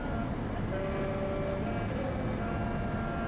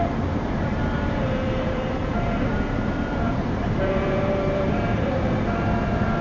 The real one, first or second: first